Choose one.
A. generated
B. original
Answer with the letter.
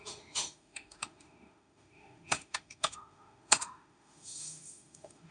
A